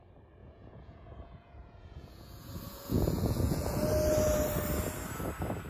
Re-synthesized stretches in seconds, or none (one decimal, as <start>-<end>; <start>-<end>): 0.4-3.8